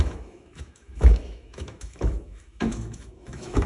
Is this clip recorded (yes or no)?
no